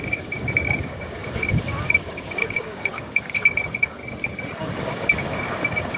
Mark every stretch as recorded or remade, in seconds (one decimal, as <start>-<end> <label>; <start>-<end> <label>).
0.0-4.0 remade; 4.0-4.6 recorded; 4.6-6.0 remade

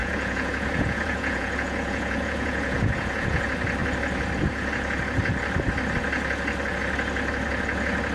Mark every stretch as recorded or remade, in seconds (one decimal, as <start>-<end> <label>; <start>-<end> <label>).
0.0-3.4 remade; 3.4-8.1 recorded

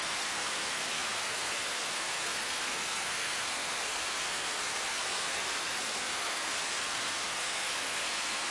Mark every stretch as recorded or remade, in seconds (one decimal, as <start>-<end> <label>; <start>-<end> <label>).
0.0-8.5 remade

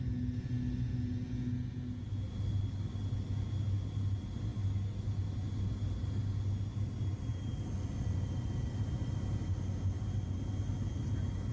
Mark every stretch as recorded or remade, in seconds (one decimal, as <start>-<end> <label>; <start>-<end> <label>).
0.0-11.5 recorded

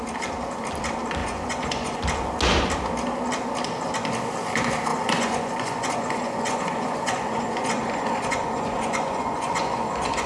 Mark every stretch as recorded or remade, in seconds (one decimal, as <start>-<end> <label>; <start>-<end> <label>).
0.0-1.2 recorded; 1.2-2.0 remade; 2.0-4.9 recorded; 4.9-10.3 remade

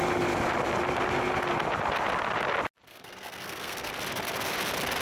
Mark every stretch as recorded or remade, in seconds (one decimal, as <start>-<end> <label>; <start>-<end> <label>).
0.0-2.9 recorded; 2.9-3.9 remade; 3.9-5.0 recorded

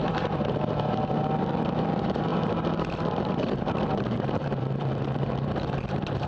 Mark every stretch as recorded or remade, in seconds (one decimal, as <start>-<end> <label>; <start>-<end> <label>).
0.0-6.3 remade

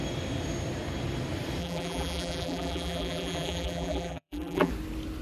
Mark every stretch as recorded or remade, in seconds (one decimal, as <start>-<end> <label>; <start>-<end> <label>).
0.0-1.6 recorded; 1.6-4.7 remade; 4.7-5.2 recorded